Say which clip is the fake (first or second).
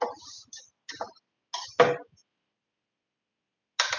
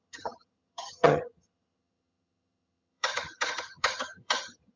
second